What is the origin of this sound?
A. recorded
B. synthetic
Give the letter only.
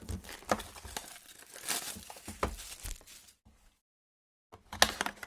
A